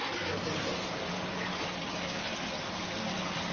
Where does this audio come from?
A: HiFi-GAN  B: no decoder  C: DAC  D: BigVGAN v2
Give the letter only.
D